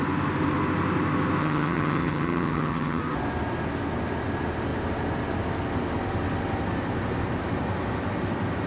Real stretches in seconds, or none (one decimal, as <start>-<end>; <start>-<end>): 0.0-1.4; 3.0-8.7